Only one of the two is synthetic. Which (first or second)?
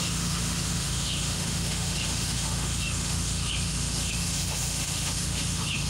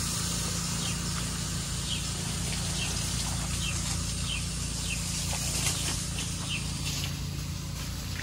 first